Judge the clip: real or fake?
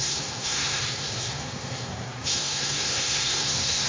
fake